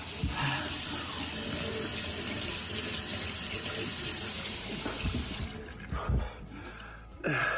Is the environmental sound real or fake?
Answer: real